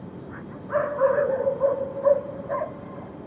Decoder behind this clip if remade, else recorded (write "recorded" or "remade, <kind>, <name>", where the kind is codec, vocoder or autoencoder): recorded